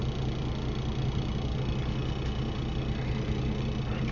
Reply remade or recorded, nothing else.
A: recorded